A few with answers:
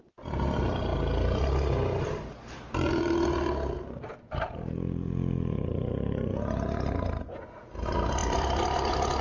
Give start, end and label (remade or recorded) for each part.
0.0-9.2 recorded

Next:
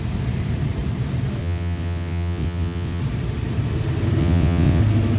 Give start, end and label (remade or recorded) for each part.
0.0-1.4 recorded; 1.4-3.0 remade; 3.0-4.2 recorded; 4.2-4.8 remade; 4.8-5.2 recorded

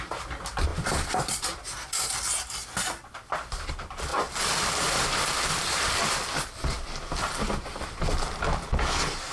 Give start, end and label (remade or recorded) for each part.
0.0-0.7 recorded; 0.7-2.1 remade; 2.1-4.1 recorded; 4.1-5.0 remade; 5.0-9.3 recorded

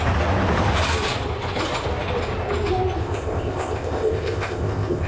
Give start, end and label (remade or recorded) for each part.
0.0-3.0 recorded; 3.0-5.1 remade

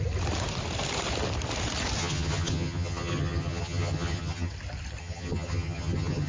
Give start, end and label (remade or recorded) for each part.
0.0-2.0 recorded; 2.0-4.5 remade; 4.5-5.0 recorded; 5.0-6.3 remade